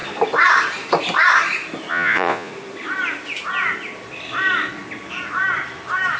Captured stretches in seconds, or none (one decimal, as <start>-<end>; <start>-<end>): 0.0-1.9; 2.5-6.2